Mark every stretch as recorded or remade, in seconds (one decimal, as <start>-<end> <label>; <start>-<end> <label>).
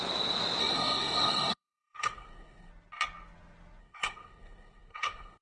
0.0-0.6 recorded; 0.6-2.7 remade; 2.7-3.8 recorded; 3.8-5.4 remade